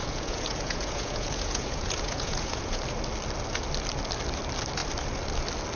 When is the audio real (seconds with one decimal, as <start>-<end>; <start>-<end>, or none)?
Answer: 2.8-5.8